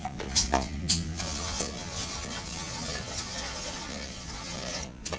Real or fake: fake